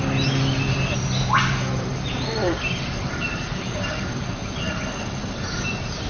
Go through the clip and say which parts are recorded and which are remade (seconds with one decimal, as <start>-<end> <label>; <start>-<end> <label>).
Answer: 0.0-0.7 recorded; 0.7-4.4 remade; 4.4-5.2 recorded; 5.2-6.1 remade